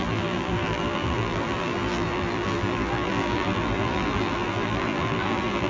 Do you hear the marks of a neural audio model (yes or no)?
yes